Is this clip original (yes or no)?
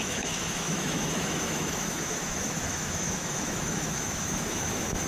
no